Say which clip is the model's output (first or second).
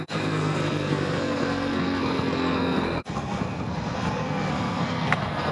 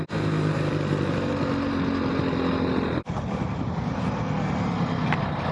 first